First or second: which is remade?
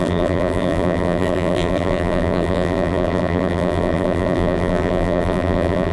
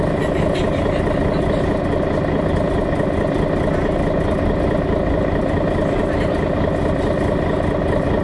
first